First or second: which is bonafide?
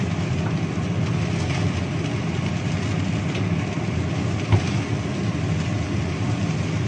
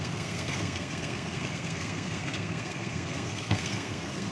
first